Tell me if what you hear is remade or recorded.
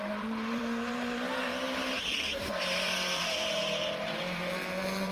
remade